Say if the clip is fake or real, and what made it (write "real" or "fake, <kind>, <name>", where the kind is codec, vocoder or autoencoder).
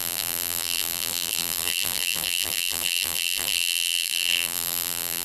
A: fake, vocoder, BigVGAN v2